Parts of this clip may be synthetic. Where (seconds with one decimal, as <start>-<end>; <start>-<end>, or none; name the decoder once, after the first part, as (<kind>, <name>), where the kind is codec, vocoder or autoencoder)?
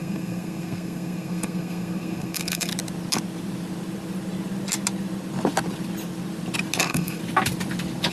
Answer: 0.0-2.7 (codec, SNAC); 6.8-7.2